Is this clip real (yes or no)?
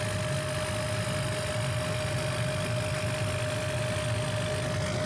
yes